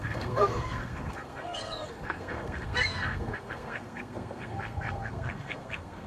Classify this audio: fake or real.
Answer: fake